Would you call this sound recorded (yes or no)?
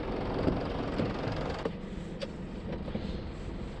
yes